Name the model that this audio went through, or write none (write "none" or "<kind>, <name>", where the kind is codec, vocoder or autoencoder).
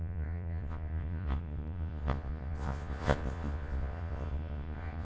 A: vocoder, Vocos